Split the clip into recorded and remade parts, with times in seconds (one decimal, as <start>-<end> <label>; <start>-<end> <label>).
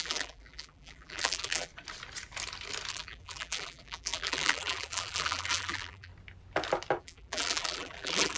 0.0-1.7 remade; 1.7-2.9 recorded; 2.9-6.1 remade; 6.1-7.0 recorded; 7.0-8.4 remade